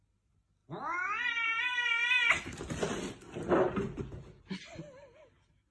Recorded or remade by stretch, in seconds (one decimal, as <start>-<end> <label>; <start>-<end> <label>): 0.0-0.6 recorded; 0.6-4.0 remade; 4.0-5.7 recorded